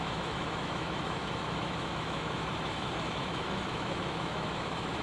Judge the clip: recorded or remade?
remade